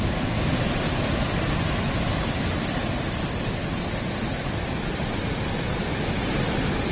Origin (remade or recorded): recorded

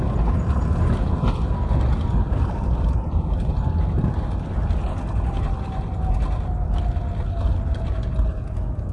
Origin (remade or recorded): recorded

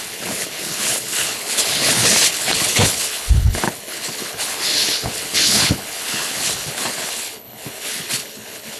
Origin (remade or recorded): remade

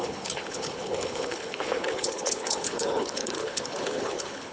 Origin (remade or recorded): remade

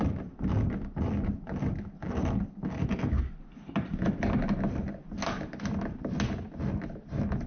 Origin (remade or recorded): recorded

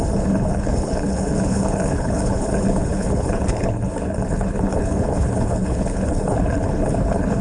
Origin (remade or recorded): remade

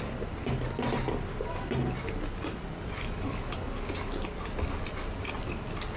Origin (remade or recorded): recorded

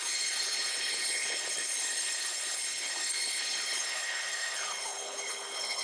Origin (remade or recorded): remade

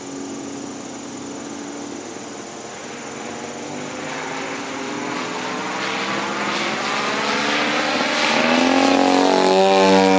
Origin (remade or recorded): recorded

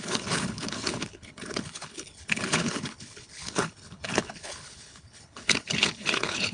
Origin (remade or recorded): remade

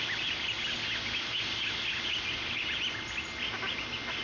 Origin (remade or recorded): recorded